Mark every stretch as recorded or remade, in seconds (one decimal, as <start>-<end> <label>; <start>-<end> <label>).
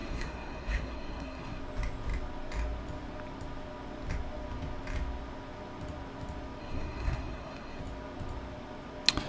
0.0-1.6 remade; 1.6-6.6 recorded; 6.6-7.8 remade; 7.8-9.3 recorded